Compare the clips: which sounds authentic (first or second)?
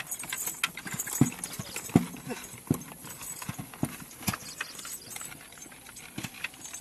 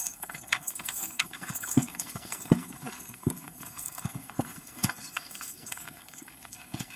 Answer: first